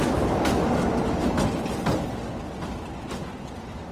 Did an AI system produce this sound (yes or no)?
no